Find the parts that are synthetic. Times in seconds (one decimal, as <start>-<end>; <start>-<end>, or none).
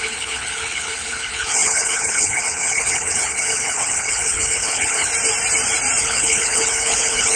0.0-5.1; 6.0-7.4